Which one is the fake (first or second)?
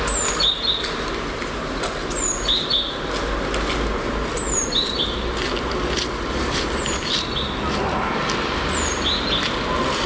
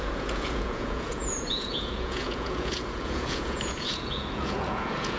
second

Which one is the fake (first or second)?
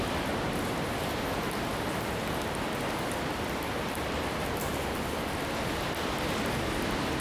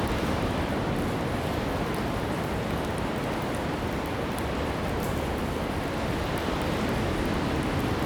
second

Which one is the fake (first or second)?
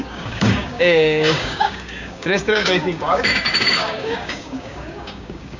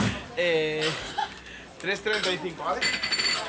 first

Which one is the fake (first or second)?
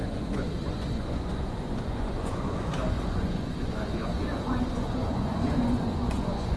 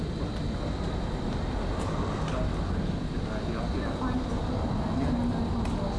first